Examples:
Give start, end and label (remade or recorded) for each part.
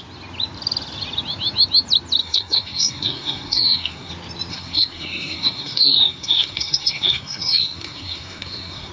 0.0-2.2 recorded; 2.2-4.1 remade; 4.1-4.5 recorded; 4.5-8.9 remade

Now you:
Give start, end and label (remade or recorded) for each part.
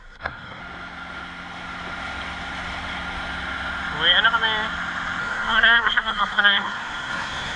0.0-0.6 remade; 0.6-5.2 recorded; 5.2-7.6 remade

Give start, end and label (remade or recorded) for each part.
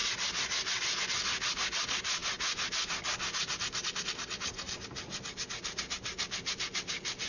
0.0-7.3 recorded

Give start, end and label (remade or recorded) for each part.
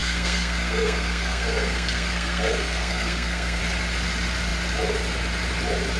0.0-3.6 remade; 3.6-6.0 recorded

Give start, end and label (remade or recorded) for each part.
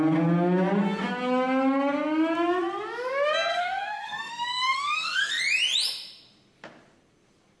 0.0-3.5 recorded; 3.5-5.4 remade; 5.4-7.6 recorded